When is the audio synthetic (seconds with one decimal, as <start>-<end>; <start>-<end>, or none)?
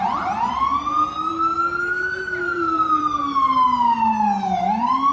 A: 2.5-3.0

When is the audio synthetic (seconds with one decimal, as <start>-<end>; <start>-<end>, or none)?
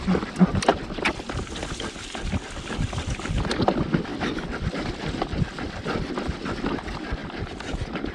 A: none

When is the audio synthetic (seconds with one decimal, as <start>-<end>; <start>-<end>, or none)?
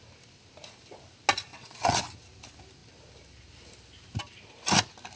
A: 1.5-2.0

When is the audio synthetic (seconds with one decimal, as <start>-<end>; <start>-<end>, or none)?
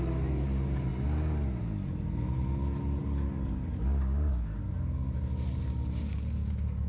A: none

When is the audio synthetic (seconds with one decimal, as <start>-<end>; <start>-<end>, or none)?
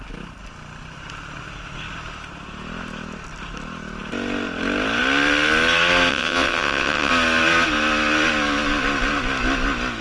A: 6.1-7.1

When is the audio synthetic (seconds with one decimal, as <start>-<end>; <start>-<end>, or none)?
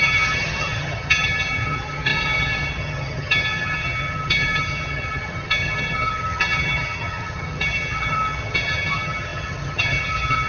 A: 0.0-10.5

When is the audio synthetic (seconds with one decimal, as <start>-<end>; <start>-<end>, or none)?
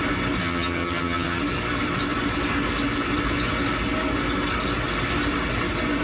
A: 0.4-1.4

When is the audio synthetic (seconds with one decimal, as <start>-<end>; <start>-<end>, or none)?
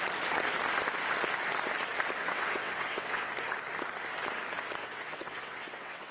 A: 2.2-3.3; 4.8-6.1